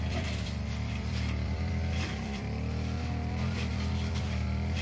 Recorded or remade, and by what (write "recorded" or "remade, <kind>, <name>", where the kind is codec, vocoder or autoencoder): remade, vocoder, BigVGAN v2